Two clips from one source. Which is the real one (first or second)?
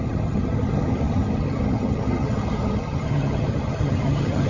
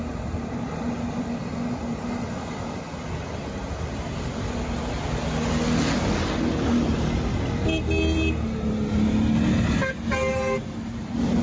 second